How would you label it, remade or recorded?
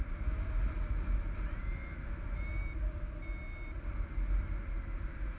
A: recorded